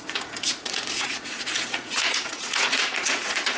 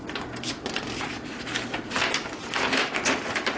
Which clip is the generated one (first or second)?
first